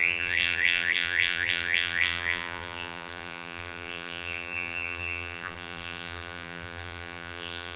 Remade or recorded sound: remade